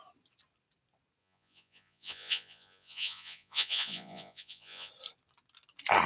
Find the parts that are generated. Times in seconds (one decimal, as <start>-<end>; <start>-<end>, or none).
1.2-4.9

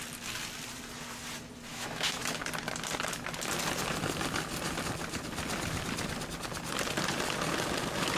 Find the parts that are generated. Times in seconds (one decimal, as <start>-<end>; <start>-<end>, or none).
1.7-2.4

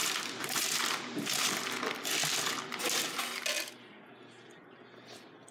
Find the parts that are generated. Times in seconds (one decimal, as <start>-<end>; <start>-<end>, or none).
0.0-1.8

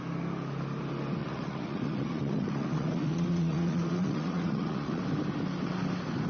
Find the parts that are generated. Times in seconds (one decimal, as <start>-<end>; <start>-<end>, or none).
1.2-5.0

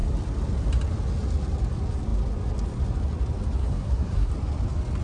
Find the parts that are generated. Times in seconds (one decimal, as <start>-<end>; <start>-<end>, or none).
3.6-4.3

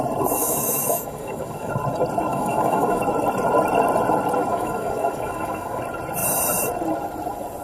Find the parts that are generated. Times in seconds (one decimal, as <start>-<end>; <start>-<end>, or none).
0.4-1.7; 2.3-3.0; 4.5-5.8